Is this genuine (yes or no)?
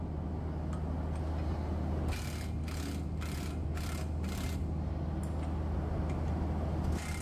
yes